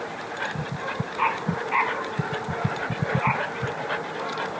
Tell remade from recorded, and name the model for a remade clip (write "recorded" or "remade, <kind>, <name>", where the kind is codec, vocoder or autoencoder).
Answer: recorded